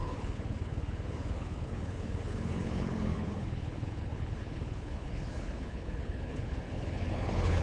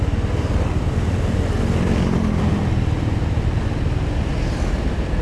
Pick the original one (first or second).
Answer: second